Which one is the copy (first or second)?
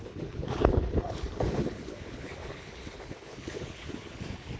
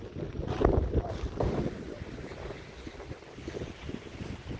first